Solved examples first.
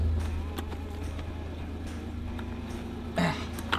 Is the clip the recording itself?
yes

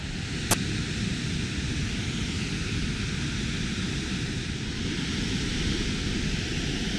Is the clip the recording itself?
yes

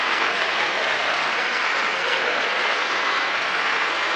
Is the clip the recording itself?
no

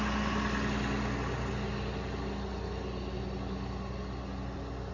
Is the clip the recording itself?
yes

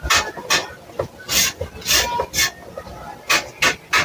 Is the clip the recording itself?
yes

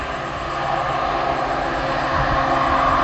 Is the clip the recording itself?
yes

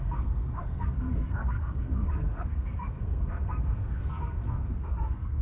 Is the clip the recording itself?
no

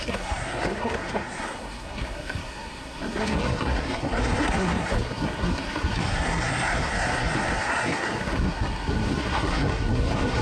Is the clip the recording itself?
no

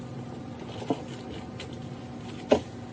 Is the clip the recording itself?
yes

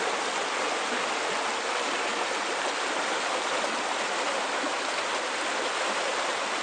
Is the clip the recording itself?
yes